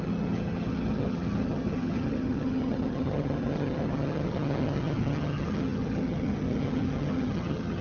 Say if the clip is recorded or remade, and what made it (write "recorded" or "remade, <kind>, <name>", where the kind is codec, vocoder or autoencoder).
remade, vocoder, HiFi-GAN